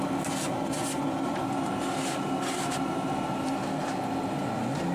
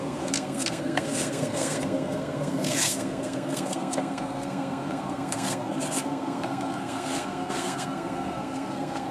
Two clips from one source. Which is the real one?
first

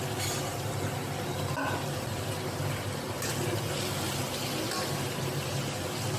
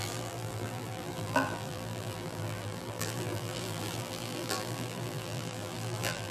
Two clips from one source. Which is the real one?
first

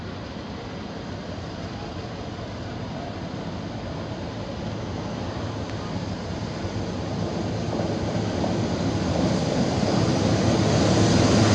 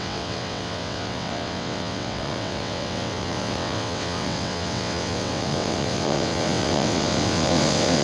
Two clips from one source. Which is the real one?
first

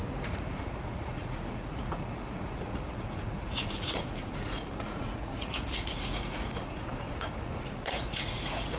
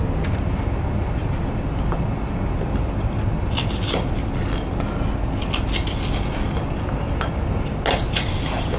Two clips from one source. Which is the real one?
second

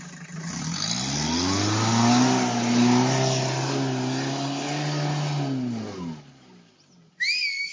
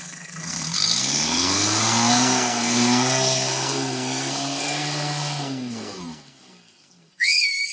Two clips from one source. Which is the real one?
first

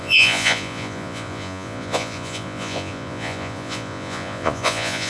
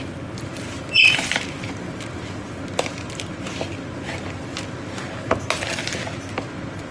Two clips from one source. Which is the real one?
second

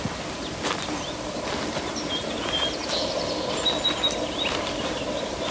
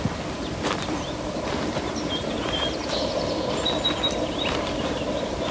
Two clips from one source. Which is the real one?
first